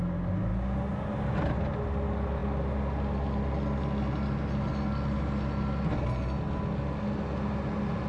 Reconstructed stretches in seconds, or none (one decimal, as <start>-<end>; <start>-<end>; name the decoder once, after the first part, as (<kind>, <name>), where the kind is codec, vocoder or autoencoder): none